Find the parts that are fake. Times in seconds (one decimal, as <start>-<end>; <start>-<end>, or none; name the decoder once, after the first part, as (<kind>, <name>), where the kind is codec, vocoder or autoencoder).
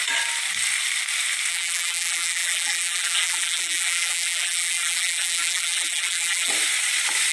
1.5-6.5 (vocoder, BigVGAN v2)